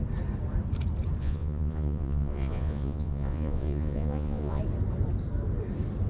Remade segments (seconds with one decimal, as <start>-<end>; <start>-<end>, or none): 1.2-4.6